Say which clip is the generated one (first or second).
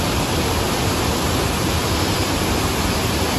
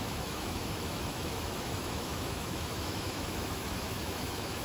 second